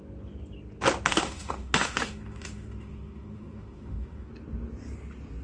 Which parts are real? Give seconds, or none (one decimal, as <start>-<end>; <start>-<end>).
0.0-1.1; 4.3-5.4